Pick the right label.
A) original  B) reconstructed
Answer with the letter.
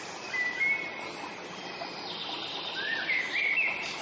A